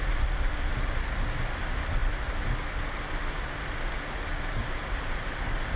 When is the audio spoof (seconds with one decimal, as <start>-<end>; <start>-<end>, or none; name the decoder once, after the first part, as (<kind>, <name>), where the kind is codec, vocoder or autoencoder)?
0.7-1.5 (vocoder, BigVGAN v2); 4.6-5.3